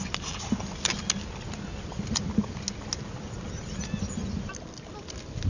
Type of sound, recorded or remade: recorded